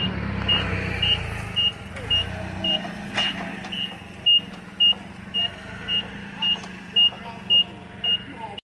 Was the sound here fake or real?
real